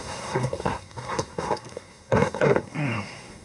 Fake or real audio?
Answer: fake